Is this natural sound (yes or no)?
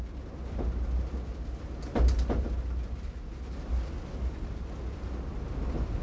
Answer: yes